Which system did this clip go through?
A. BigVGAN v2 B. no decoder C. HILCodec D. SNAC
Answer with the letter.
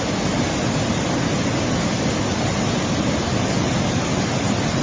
B